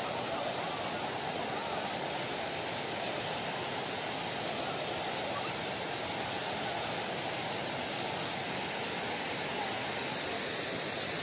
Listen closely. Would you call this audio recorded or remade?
recorded